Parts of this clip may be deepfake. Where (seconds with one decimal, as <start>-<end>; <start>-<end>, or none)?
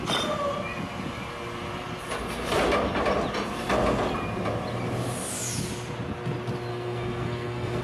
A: 6.7-7.8